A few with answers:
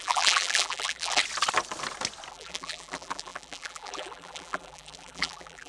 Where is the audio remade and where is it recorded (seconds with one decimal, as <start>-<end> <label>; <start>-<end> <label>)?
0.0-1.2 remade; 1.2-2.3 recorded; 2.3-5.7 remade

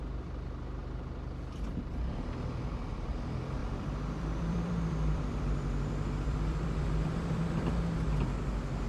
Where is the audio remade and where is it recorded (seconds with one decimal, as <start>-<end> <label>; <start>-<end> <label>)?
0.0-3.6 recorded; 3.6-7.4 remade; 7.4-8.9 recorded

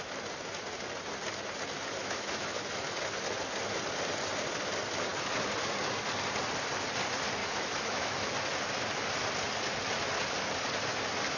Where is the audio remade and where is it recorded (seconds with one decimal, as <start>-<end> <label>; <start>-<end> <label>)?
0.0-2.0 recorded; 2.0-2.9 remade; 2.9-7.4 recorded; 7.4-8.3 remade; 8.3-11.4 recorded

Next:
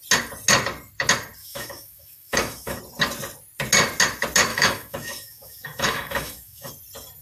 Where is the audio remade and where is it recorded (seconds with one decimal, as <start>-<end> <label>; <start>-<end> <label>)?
0.0-1.4 recorded; 1.4-2.8 remade; 2.8-4.5 recorded; 4.5-6.7 remade; 6.7-7.2 recorded

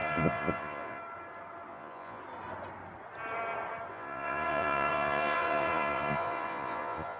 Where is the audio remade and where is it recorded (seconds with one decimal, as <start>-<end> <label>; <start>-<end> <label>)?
0.0-1.0 remade; 1.0-1.7 recorded; 1.7-2.2 remade; 2.2-3.9 recorded; 3.9-7.2 remade